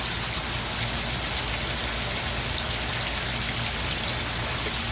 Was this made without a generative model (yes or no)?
yes